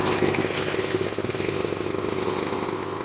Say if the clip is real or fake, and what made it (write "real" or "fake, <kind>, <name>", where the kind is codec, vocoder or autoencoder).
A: fake, codec, ZipCodec